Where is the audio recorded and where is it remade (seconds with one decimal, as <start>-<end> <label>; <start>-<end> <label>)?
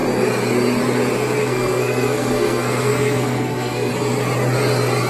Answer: 0.0-1.4 recorded; 1.4-3.9 remade; 3.9-5.1 recorded